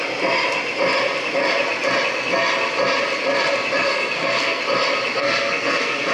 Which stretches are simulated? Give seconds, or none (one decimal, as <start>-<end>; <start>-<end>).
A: 3.8-4.6; 5.2-6.1